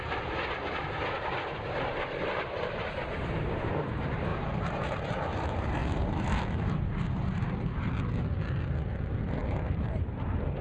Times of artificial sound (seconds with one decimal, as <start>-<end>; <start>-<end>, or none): 1.5-3.7; 4.3-7.9; 9.4-10.6